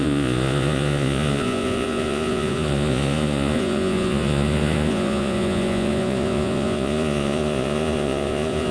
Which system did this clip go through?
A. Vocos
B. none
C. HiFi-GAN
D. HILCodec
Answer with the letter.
A